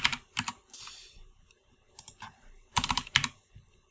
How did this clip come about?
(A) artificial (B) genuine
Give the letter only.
A